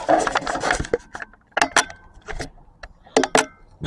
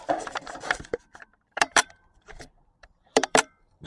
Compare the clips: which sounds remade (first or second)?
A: second